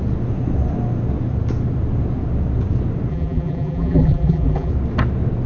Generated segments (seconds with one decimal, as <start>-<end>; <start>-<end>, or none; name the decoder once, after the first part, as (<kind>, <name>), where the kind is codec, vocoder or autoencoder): 3.1-4.7 (vocoder, BigVGAN v2)